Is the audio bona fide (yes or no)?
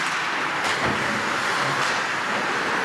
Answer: yes